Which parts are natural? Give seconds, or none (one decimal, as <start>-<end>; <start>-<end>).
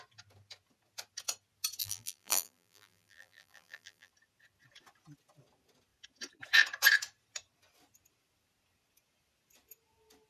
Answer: 0.0-1.8; 4.1-10.3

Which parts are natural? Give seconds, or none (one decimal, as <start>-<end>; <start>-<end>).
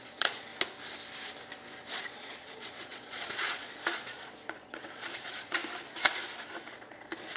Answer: 0.5-1.9; 5.6-6.7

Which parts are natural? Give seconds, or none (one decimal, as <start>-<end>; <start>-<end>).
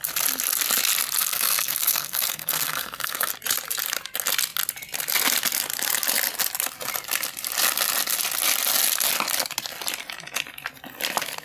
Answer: 0.0-1.2; 3.3-11.4